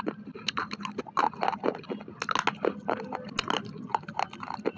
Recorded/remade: recorded